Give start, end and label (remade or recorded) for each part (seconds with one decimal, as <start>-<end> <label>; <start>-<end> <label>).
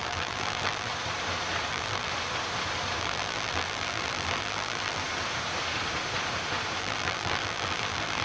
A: 0.0-0.9 remade; 0.9-1.7 recorded; 1.7-2.1 remade; 2.1-3.0 recorded; 3.0-5.0 remade; 5.0-6.8 recorded; 6.8-8.2 remade